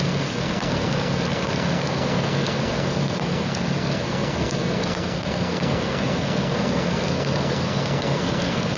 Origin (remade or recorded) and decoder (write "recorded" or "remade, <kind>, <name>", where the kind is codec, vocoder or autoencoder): remade, codec, SNAC